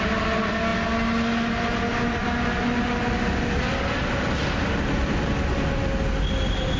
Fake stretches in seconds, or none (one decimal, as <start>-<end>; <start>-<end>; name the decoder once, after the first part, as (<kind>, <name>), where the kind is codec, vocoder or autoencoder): none